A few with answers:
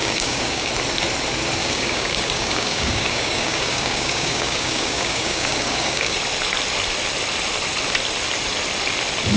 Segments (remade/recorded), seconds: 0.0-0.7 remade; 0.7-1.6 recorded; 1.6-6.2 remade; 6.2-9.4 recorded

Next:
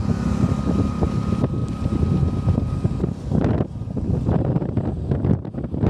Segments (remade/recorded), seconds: 0.0-5.9 recorded